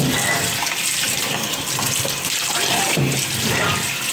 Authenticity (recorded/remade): recorded